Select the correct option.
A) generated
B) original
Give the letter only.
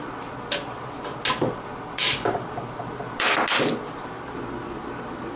B